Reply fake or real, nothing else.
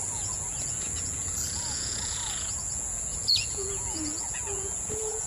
fake